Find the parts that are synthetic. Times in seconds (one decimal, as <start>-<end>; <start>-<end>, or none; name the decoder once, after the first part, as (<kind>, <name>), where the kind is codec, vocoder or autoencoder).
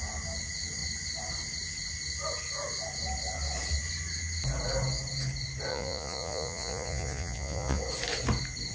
5.7-7.8 (vocoder, Vocos)